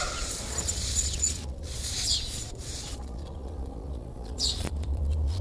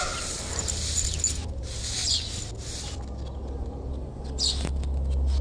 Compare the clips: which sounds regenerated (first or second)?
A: first